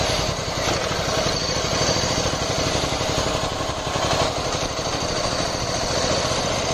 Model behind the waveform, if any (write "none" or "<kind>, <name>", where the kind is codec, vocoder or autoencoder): none